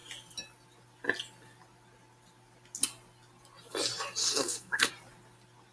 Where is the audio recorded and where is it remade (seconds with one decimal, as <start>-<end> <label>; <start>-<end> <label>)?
0.0-4.2 recorded; 4.2-4.9 remade; 4.9-5.7 recorded